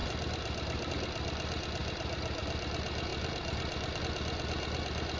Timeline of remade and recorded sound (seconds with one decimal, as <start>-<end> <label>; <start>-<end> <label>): 0.0-1.8 recorded; 1.8-2.4 remade; 2.4-3.1 recorded; 3.1-4.0 remade; 4.0-5.2 recorded